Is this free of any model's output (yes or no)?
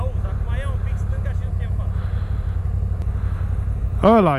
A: yes